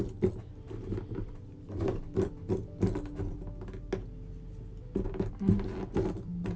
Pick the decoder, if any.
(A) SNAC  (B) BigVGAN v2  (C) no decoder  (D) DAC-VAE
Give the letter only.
C